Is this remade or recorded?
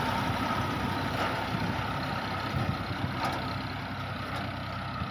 remade